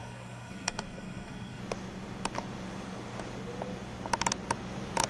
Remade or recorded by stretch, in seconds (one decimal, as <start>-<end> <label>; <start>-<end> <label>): 0.0-1.6 remade; 1.6-5.1 recorded